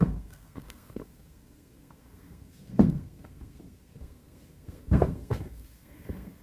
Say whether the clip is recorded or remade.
remade